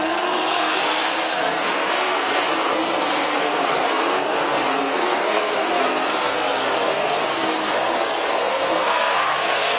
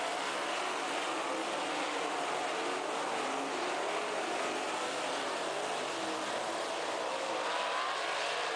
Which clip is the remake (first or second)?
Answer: first